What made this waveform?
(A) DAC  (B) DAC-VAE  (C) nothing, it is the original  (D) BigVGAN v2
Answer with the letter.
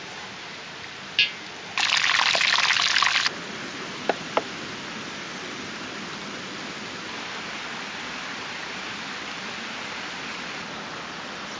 C